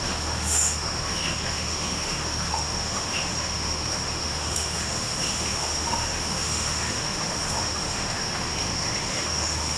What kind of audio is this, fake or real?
fake